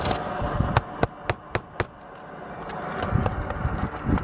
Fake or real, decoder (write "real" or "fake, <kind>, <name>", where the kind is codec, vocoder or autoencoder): real